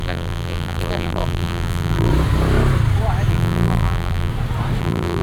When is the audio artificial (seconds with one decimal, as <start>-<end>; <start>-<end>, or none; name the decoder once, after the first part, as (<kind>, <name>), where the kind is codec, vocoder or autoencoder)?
0.0-2.1 (vocoder, BigVGAN v2); 3.3-4.3; 4.8-5.2